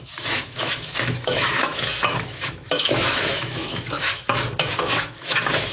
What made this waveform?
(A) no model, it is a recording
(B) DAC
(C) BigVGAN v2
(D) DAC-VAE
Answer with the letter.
D